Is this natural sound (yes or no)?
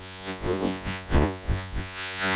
no